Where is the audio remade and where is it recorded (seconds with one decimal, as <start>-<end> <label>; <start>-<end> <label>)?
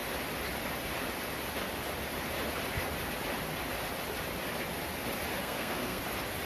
0.0-5.4 recorded; 5.4-6.0 remade; 6.0-6.5 recorded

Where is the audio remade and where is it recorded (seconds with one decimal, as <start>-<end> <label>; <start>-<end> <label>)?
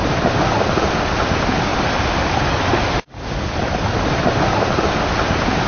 0.0-5.7 recorded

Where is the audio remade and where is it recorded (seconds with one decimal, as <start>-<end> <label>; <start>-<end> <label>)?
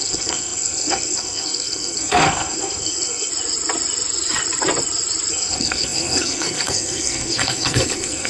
0.0-3.3 remade; 3.3-5.3 recorded; 5.3-8.3 remade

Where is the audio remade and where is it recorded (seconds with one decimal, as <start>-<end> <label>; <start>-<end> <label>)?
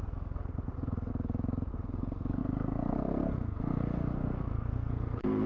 0.0-1.1 remade; 1.1-1.7 recorded; 1.7-5.5 remade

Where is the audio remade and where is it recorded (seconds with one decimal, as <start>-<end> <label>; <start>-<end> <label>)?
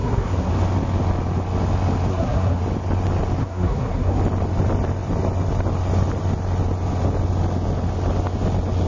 0.0-0.5 remade; 0.5-2.1 recorded; 2.1-2.6 remade; 2.6-3.4 recorded; 3.4-4.2 remade; 4.2-8.9 recorded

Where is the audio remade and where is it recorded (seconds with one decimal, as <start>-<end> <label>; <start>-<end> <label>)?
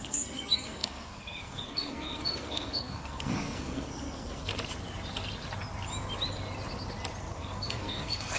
0.0-4.5 remade; 4.5-7.2 recorded; 7.2-8.4 remade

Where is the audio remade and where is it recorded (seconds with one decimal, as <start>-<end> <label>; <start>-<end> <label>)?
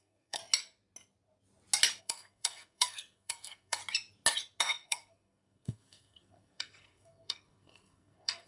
0.0-0.4 remade; 0.4-2.0 recorded; 2.0-3.8 remade; 3.8-4.6 recorded; 4.6-8.5 remade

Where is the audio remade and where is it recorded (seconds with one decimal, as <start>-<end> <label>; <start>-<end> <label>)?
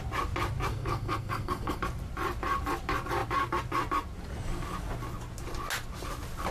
0.0-0.7 recorded; 0.7-1.8 remade; 1.8-6.5 recorded